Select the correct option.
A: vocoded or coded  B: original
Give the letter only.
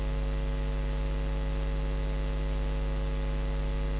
B